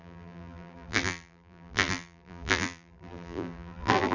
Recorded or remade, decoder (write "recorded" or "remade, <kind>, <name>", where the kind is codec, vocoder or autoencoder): remade, vocoder, BigVGAN v2